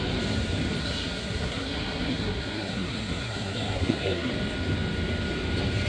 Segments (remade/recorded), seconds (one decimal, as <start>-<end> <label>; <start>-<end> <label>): 0.0-0.8 recorded; 0.8-4.3 remade; 4.3-5.9 recorded